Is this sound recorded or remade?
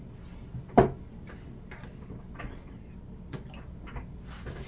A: recorded